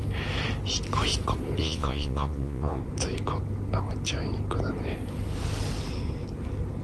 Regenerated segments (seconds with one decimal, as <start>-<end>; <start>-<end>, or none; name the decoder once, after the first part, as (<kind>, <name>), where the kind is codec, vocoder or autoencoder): 1.6-2.8 (vocoder, Vocos)